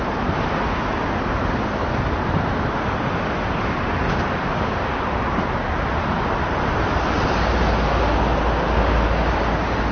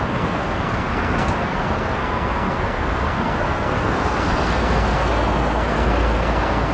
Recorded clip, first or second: first